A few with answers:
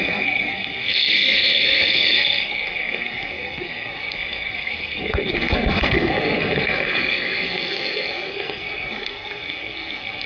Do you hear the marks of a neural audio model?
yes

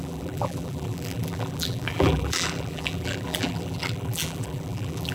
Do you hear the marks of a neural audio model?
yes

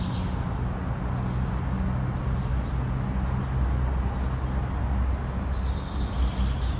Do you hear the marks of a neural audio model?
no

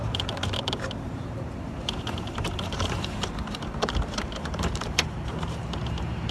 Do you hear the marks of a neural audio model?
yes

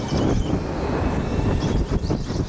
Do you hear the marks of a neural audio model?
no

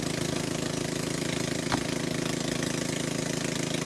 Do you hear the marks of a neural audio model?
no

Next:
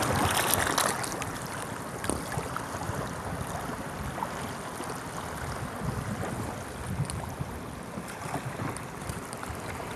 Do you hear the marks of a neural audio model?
no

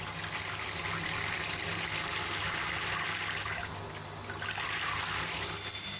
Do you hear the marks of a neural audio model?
no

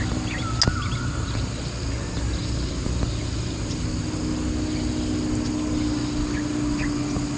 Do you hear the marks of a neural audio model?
no